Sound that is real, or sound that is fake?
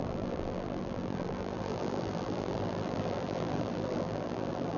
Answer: fake